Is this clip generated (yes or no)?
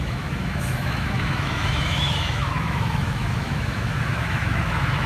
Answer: yes